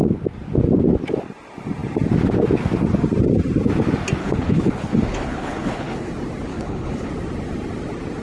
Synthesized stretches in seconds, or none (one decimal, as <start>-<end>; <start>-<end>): 4.2-6.1; 6.5-7.1